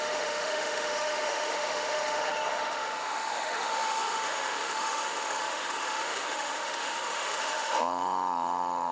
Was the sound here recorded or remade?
remade